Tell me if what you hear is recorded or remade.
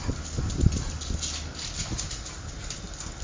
recorded